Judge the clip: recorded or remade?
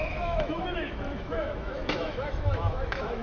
remade